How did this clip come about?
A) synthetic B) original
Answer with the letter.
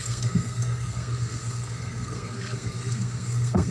A